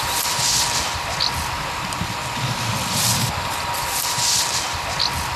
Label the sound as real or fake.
real